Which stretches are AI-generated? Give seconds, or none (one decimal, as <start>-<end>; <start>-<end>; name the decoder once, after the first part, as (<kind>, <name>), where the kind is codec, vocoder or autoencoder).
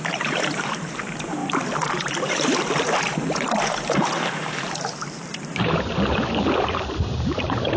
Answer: 0.0-7.8 (vocoder, BigVGAN v2)